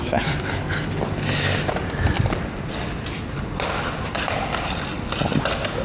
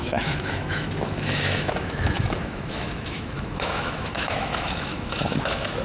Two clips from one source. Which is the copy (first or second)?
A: second